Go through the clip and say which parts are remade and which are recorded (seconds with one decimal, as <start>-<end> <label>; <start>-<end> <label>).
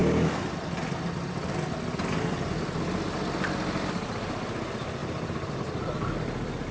0.0-2.0 remade; 2.0-5.0 recorded; 5.0-5.5 remade; 5.5-6.7 recorded